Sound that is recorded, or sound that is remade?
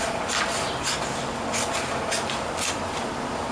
recorded